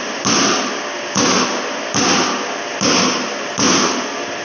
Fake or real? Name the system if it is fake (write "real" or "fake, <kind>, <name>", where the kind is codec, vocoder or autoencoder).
real